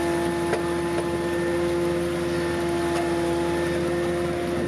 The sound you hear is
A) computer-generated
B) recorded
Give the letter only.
B